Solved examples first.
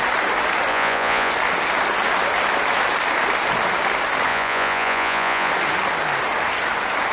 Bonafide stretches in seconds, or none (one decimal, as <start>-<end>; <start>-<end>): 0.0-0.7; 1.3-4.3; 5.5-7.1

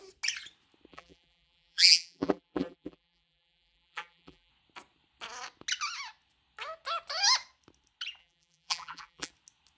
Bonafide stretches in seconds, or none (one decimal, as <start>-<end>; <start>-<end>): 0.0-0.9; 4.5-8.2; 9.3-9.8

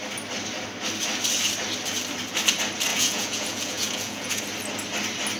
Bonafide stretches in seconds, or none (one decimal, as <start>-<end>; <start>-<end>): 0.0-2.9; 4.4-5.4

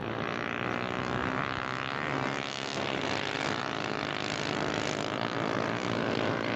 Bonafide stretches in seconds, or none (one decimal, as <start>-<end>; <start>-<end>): 0.0-6.6

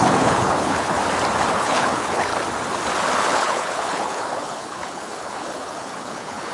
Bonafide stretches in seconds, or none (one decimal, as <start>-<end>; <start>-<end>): 1.0-1.5; 2.3-3.2

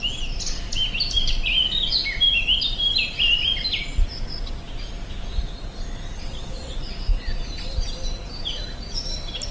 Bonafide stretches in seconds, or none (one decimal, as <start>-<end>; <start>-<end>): 0.0-6.3; 6.9-9.5

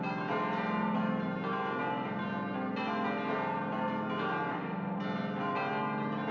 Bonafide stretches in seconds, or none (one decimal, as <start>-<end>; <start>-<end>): 0.0-4.5; 5.0-6.3